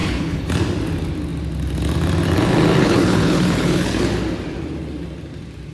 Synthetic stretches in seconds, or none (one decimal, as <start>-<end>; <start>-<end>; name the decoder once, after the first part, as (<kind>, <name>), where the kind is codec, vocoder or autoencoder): 0.0-0.5 (codec, HILCodec); 2.8-4.0